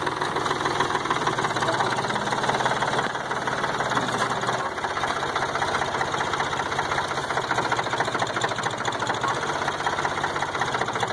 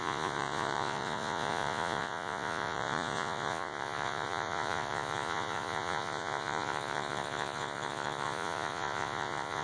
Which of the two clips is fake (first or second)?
second